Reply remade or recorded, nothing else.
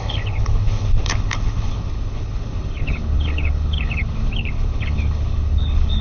remade